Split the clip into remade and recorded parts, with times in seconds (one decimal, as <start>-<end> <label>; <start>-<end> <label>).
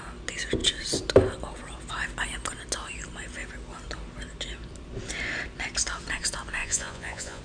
0.0-6.6 recorded; 6.6-7.4 remade